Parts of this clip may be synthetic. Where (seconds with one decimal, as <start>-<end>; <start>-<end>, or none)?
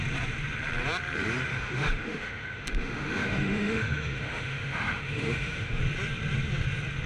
1.5-5.8